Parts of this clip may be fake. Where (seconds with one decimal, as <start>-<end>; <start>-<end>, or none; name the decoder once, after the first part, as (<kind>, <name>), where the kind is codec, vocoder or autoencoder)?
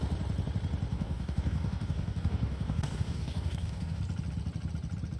0.9-4.0 (codec, DAC)